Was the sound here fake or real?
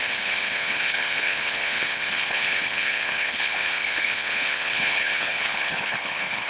fake